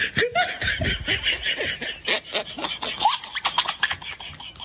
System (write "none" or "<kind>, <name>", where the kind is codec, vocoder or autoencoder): none